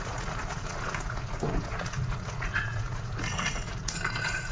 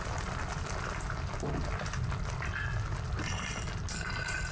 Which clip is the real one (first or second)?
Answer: second